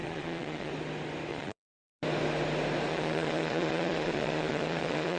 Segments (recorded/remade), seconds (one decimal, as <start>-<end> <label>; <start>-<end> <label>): 0.0-0.7 remade; 0.7-1.3 recorded; 1.3-1.9 remade; 1.9-2.9 recorded; 2.9-5.2 remade